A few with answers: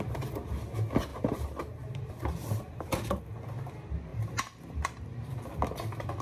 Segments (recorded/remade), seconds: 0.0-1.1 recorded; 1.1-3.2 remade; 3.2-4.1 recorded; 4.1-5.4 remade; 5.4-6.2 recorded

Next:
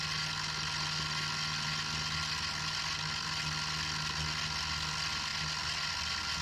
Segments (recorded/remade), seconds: 0.0-6.4 recorded

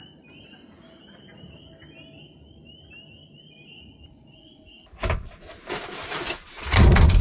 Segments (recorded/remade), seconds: 0.0-3.2 recorded; 3.2-7.2 remade

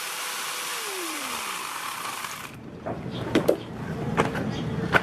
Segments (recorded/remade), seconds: 0.0-0.7 recorded; 0.7-3.7 remade; 3.7-5.0 recorded

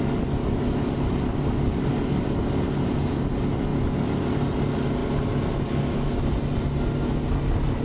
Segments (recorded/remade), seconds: 0.0-7.8 recorded

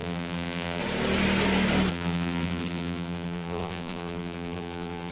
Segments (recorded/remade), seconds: 0.0-0.8 remade; 0.8-1.9 recorded; 1.9-5.1 remade

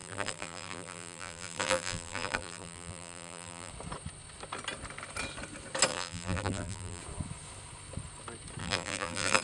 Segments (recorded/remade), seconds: 0.0-3.7 remade; 3.7-5.9 recorded; 5.9-7.0 remade; 7.0-8.6 recorded; 8.6-9.4 remade

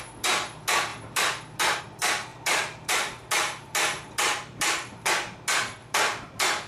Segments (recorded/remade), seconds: 0.0-2.3 recorded; 2.3-5.1 remade; 5.1-5.8 recorded; 5.8-6.7 remade